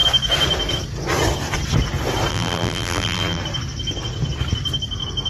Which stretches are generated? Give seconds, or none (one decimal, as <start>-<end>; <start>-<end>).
2.3-3.4